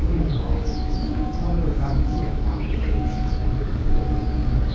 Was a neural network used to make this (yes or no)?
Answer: yes